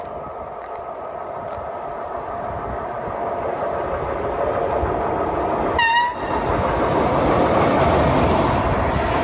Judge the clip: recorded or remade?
recorded